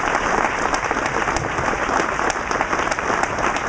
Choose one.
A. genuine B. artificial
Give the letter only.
A